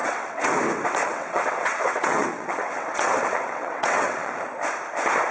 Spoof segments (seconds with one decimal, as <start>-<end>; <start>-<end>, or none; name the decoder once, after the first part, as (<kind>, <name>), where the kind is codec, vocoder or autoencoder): 0.0-0.6 (vocoder, WaveNeXt); 1.1-4.3